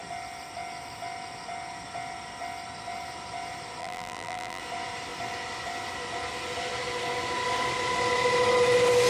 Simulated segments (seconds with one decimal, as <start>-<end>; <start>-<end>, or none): 3.8-4.6